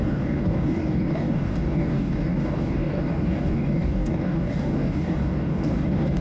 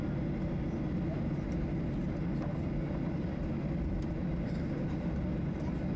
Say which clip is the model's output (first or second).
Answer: first